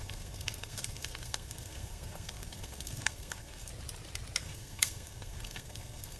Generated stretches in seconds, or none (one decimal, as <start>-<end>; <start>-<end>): 0.0-3.7; 4.4-6.2